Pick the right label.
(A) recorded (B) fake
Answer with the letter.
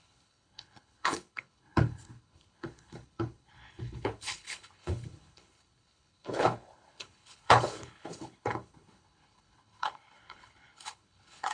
B